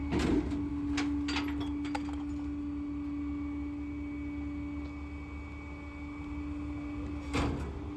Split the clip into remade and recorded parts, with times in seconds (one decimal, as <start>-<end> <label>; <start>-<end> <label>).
0.0-8.0 recorded